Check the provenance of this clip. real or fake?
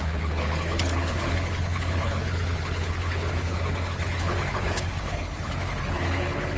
fake